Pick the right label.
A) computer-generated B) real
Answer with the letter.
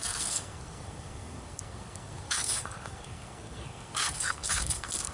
A